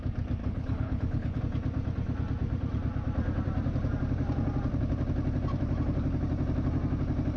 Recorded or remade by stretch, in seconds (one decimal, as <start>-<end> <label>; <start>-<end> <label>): 0.0-0.4 recorded; 0.4-1.4 remade; 1.4-7.4 recorded